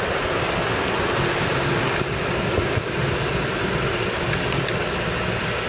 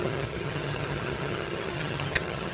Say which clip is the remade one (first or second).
second